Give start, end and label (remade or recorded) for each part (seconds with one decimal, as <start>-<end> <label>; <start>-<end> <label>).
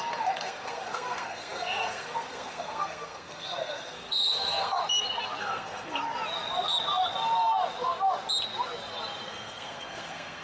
0.0-4.8 remade; 4.8-5.4 recorded; 5.4-6.0 remade; 6.0-9.3 recorded; 9.3-10.4 remade